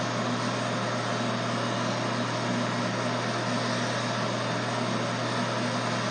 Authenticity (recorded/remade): recorded